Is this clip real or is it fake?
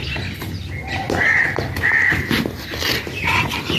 real